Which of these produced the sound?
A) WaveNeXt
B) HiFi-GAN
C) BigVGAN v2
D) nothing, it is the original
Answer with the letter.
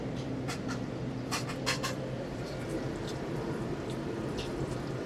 C